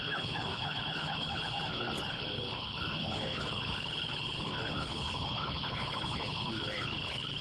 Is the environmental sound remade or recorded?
remade